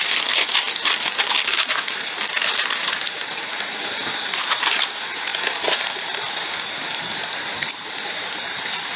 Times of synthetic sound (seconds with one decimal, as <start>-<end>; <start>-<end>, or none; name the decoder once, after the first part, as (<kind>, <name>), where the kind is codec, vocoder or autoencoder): none